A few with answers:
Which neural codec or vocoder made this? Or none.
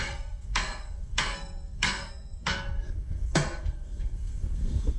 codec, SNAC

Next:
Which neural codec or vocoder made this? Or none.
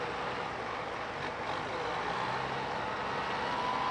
none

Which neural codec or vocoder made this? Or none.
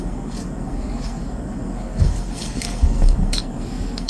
codec, SNAC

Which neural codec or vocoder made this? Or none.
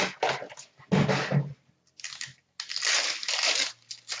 none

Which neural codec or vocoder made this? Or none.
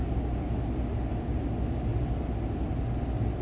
none